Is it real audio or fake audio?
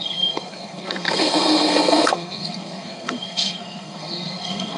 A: fake